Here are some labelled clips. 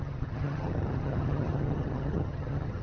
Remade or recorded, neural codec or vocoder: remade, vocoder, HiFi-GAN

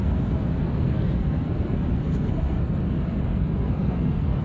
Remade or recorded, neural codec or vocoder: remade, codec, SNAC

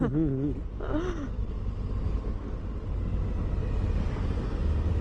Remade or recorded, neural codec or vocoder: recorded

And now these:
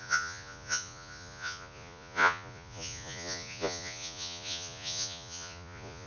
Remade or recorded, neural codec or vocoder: remade, vocoder, Vocos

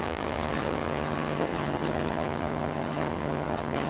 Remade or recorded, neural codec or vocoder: remade, vocoder, HiFi-GAN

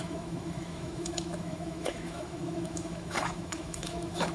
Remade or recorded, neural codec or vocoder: remade, autoencoder, DAC-VAE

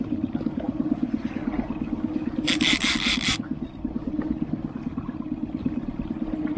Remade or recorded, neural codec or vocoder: recorded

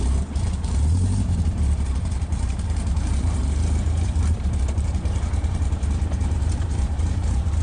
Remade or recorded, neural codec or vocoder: remade, vocoder, BigVGAN v2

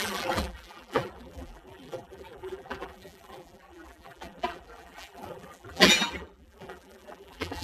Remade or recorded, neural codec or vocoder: remade, vocoder, BigVGAN v2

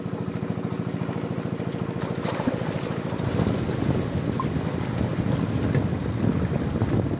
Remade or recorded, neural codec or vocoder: recorded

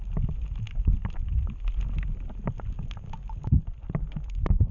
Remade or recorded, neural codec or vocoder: recorded